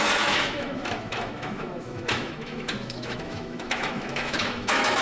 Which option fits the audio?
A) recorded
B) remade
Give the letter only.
B